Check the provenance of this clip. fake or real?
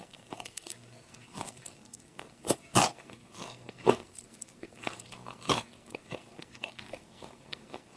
fake